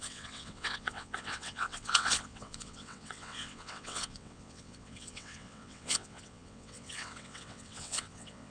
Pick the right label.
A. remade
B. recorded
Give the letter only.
A